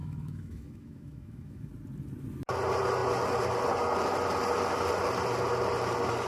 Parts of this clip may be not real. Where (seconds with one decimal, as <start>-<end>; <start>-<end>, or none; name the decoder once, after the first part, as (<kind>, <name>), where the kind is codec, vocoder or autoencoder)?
0.0-1.7 (autoencoder, DAC-VAE)